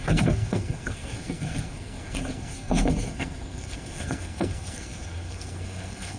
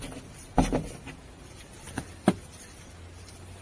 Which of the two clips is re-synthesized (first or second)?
first